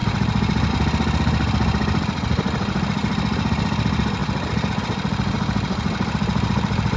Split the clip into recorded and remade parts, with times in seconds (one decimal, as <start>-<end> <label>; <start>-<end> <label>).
0.0-0.7 recorded; 0.7-7.0 remade